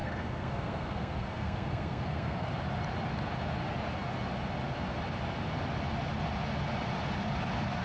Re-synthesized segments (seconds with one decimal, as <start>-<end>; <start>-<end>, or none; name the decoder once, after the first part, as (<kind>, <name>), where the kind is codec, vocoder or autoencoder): 0.0-2.5 (codec, SNAC)